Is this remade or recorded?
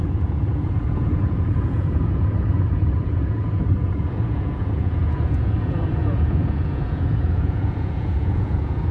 remade